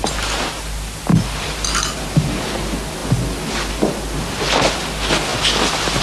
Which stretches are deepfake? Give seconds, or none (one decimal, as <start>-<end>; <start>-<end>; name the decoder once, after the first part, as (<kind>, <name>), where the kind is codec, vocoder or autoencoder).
1.1-2.4 (vocoder, BigVGAN v2)